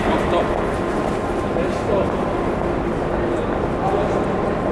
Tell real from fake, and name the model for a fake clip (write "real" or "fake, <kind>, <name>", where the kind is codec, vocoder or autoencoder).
real